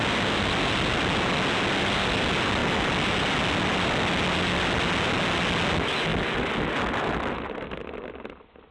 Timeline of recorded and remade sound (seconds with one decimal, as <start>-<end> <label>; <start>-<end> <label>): 0.0-8.7 recorded